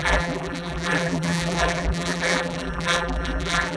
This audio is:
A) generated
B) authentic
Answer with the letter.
A